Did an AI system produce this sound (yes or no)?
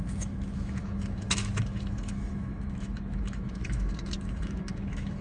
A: yes